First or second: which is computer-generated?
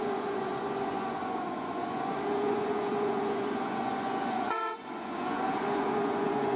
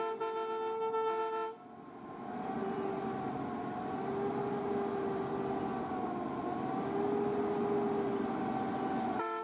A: first